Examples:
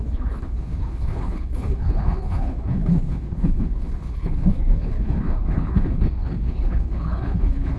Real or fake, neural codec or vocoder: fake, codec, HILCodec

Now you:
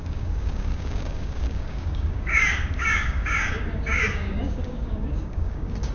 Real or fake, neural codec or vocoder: fake, codec, DAC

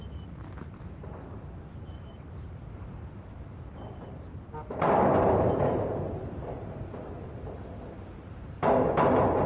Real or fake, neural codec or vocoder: real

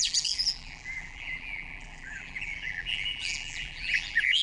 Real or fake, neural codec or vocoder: fake, vocoder, BigVGAN v2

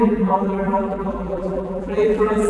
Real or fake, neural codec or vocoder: fake, vocoder, BigVGAN v2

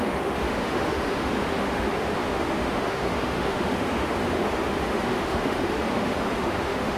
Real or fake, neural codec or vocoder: fake, autoencoder, DAC-VAE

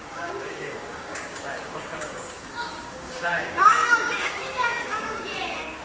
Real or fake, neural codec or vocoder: fake, codec, DAC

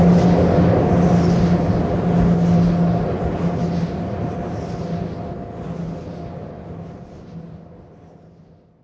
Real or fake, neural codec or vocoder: real